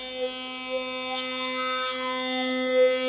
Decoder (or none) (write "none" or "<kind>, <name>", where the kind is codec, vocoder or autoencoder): none